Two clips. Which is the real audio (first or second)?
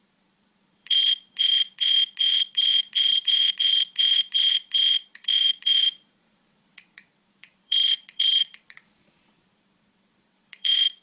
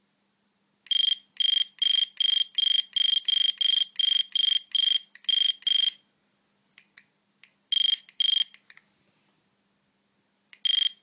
second